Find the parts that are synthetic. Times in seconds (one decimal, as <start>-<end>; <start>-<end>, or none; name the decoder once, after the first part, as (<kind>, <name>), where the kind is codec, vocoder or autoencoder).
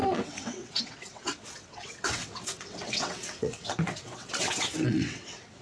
0.0-5.6 (vocoder, WaveNeXt)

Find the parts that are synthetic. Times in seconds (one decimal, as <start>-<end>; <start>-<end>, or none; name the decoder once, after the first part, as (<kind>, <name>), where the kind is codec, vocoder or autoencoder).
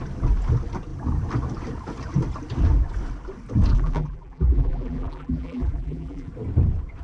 3.7-6.3 (vocoder, BigVGAN v2)